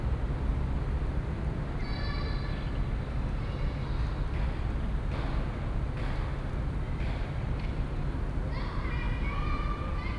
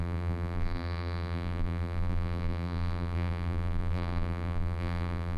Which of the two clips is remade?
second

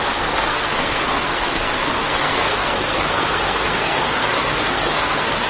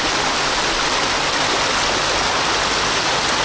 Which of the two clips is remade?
first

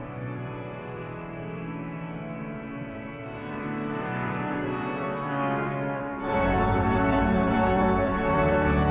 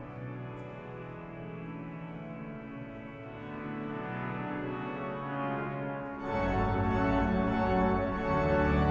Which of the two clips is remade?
first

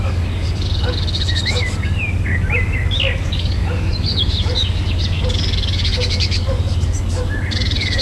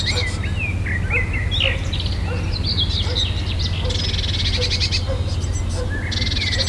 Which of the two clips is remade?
first